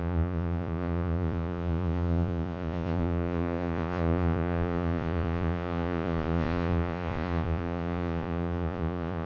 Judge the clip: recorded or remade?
remade